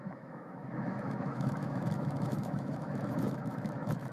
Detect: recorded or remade remade